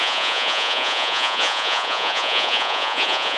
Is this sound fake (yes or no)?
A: yes